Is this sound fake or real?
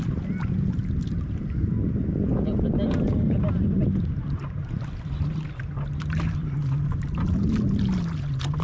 real